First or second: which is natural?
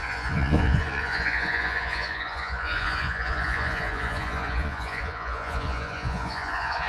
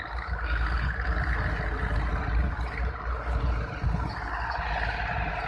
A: second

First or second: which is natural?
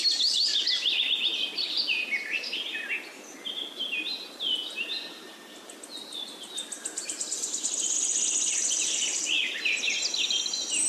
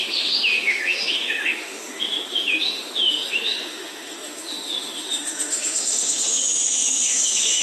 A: first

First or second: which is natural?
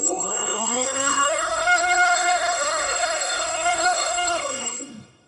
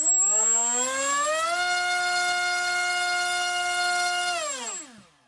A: second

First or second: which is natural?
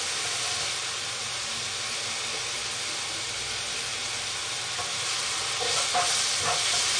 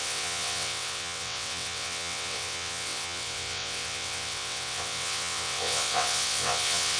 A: first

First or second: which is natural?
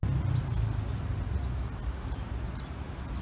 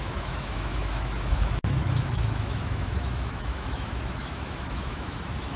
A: first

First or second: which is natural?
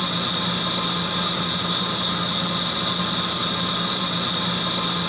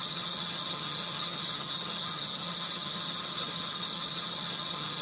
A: first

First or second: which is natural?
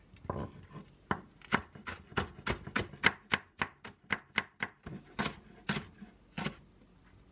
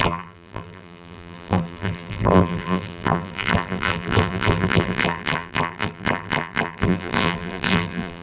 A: first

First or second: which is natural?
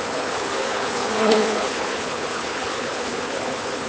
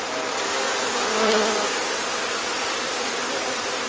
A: second